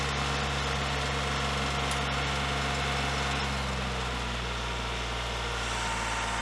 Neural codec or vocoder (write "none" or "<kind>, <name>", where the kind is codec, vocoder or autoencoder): none